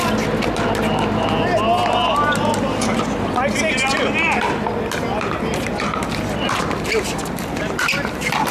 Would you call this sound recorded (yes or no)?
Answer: yes